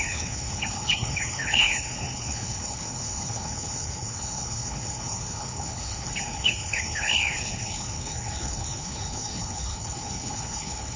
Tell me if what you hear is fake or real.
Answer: fake